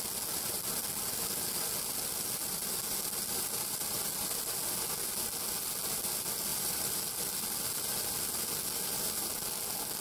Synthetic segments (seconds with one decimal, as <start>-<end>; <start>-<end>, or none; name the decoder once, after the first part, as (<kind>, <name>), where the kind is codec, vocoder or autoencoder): 6.5-7.0 (vocoder, BigVGAN v2)